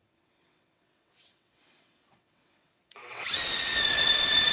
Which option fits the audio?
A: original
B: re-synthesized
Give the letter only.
B